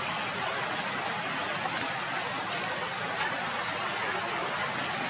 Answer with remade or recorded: recorded